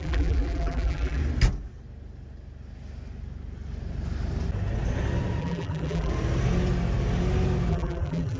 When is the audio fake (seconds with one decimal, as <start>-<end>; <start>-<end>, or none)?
0.0-1.2; 5.4-6.1; 7.7-8.4

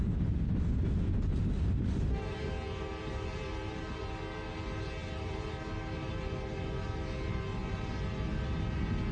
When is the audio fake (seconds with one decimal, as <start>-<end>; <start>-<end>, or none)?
none

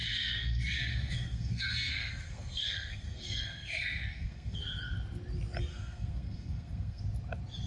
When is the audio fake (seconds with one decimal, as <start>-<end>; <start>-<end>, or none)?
0.0-4.6; 5.7-7.0

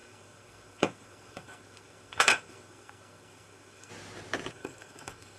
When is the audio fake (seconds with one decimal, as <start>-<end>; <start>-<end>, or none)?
0.0-3.9; 4.5-5.4

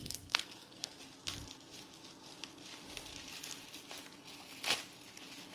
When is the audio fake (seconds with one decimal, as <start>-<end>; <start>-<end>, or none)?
0.0-1.0